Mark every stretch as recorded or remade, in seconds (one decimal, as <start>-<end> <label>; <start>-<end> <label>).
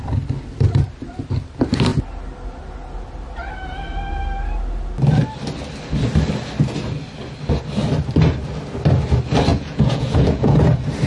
0.0-9.5 recorded; 9.5-10.6 remade; 10.6-11.1 recorded